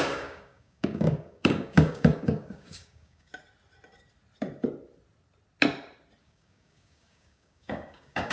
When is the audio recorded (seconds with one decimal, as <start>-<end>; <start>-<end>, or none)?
3.3-6.2